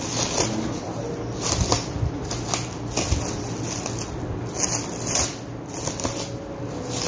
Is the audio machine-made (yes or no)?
no